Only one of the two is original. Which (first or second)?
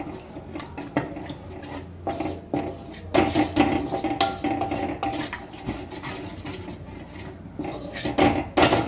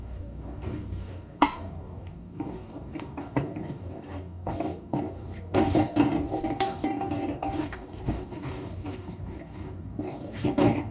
first